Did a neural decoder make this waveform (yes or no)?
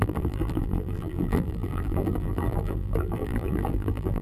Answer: yes